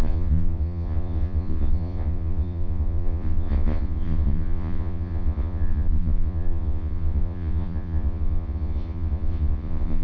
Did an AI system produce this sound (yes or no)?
yes